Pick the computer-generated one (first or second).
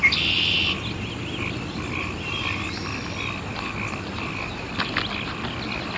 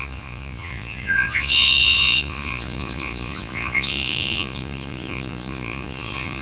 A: second